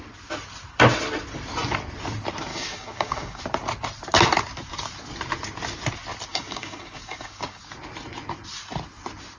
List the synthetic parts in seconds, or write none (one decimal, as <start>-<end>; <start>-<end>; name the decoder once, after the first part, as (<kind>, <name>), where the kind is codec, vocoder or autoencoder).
2.5-3.4 (codec, DAC); 6.3-7.6